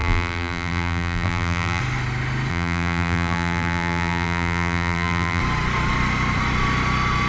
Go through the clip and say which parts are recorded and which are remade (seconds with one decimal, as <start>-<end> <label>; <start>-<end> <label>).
0.0-1.8 remade; 1.8-2.5 recorded; 2.5-5.4 remade; 5.4-7.3 recorded